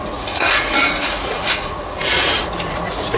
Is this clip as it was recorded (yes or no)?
no